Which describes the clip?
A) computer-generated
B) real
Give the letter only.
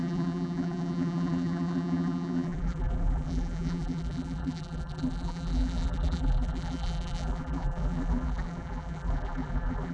A